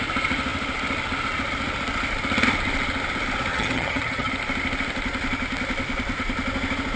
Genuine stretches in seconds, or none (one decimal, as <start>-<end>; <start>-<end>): 0.0-3.5; 4.3-7.0